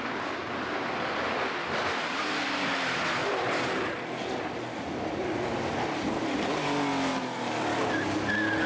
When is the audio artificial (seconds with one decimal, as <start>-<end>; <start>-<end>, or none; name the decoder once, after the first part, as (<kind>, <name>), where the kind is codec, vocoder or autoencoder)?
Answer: none